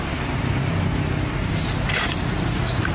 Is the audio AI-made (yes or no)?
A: yes